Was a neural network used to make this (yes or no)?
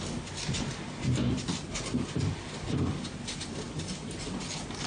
no